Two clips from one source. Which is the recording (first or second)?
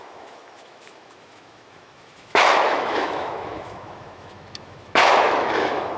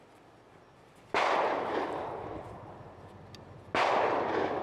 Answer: second